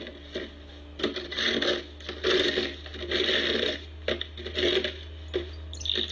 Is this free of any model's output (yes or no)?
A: yes